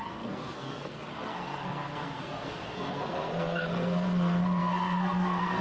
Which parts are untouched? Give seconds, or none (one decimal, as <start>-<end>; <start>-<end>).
none